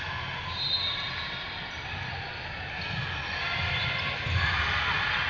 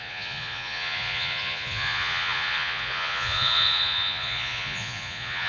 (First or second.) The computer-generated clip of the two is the second